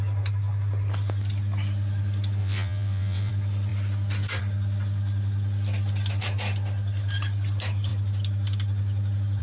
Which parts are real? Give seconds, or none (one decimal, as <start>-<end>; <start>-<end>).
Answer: 0.0-2.4; 3.3-9.4